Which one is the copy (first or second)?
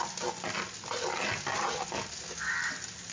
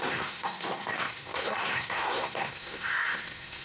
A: second